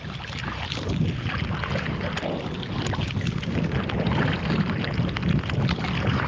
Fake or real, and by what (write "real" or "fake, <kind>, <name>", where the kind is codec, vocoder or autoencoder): real